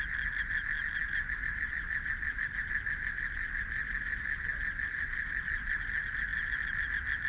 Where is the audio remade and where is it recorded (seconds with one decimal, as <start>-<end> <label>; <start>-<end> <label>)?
0.0-1.0 recorded; 1.0-2.6 remade; 2.6-3.8 recorded; 3.8-5.8 remade; 5.8-7.3 recorded